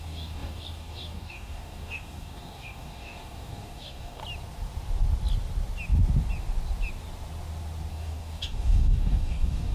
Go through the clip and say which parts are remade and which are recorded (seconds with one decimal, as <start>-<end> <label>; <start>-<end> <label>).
0.0-4.2 remade; 4.2-7.9 recorded; 7.9-9.7 remade